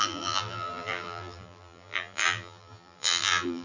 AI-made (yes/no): yes